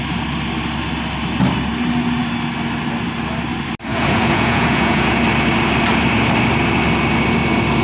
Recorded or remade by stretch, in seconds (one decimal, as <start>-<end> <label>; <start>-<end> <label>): 0.0-3.9 recorded; 3.9-5.2 remade; 5.2-7.8 recorded